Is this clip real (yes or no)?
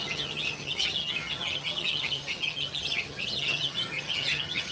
no